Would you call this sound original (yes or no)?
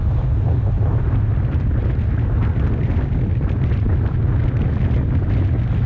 yes